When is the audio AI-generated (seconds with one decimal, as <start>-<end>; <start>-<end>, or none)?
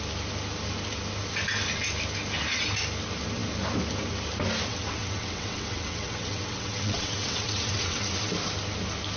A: 4.7-8.3